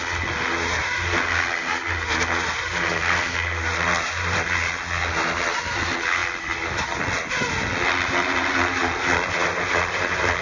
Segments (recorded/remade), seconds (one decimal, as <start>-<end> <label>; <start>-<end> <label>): 0.0-10.4 recorded